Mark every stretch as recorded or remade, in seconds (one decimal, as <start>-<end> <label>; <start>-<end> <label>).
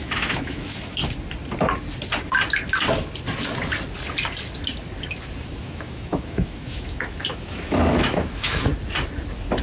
0.0-1.0 remade; 1.0-5.6 recorded; 5.6-8.7 remade; 8.7-9.6 recorded